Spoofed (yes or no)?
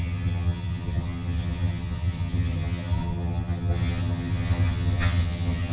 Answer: yes